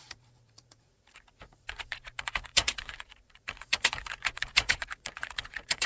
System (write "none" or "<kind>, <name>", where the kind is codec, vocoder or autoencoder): vocoder, Vocos